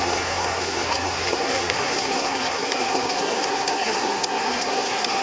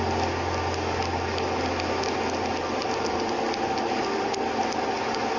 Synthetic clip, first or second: first